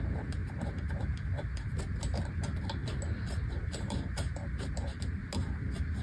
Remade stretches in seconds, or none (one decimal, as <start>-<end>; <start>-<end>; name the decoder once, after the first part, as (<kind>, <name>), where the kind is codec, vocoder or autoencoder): 0.0-2.8 (vocoder, BigVGAN v2); 3.5-5.2